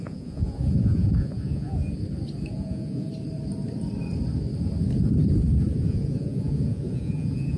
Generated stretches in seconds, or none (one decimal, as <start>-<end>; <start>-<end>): 0.0-1.8; 2.5-3.1; 5.8-7.6